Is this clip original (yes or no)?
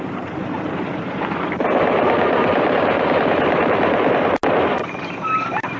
no